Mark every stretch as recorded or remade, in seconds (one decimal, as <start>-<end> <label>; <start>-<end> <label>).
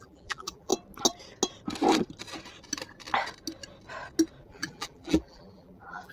0.0-0.7 remade; 0.7-4.4 recorded; 4.4-6.1 remade